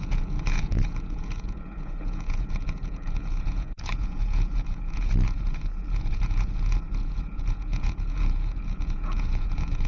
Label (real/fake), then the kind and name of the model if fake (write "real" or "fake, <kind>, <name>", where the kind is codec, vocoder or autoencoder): fake, vocoder, Vocos